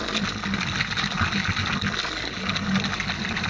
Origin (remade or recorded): recorded